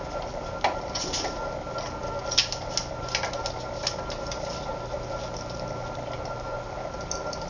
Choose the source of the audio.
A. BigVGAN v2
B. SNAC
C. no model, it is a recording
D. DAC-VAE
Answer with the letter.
C